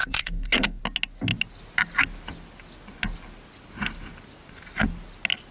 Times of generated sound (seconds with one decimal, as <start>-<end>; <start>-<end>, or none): 0.0-0.8